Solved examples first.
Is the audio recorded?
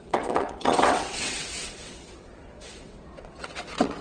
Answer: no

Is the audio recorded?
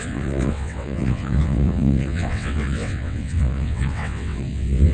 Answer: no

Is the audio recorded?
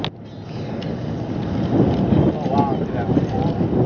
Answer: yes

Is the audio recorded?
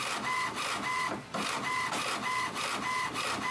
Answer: yes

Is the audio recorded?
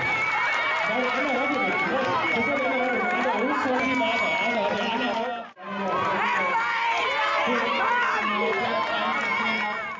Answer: yes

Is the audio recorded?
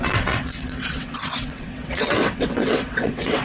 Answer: no